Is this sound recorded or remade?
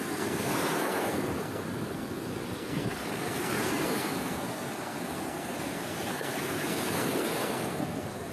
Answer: remade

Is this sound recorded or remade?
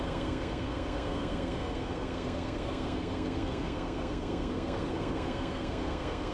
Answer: remade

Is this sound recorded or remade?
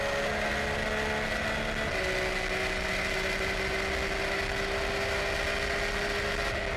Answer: recorded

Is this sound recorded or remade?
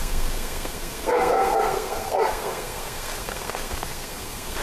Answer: remade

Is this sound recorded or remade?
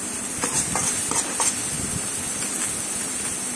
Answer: recorded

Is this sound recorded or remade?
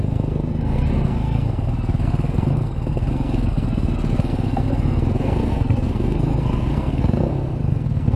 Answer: remade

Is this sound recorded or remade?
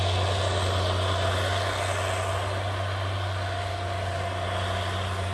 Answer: recorded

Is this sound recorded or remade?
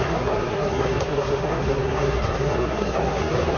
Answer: remade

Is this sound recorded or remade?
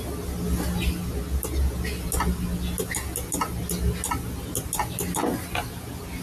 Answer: recorded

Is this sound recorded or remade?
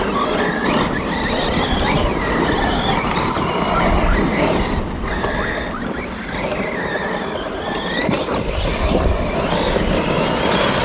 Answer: recorded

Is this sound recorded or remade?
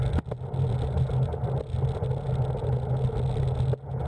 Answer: recorded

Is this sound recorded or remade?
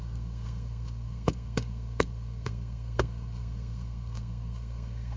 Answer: remade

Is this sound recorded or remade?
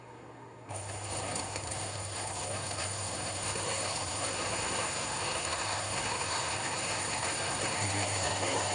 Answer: remade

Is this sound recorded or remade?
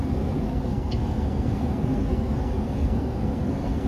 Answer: remade